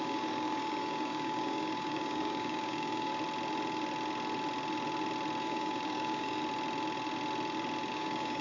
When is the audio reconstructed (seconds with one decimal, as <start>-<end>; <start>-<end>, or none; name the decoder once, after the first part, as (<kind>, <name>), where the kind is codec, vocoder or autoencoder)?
0.0-3.1 (codec, DAC); 5.4-6.4; 7.9-8.4